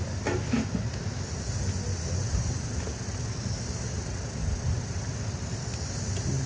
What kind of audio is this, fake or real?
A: real